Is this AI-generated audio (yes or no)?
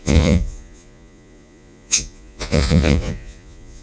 yes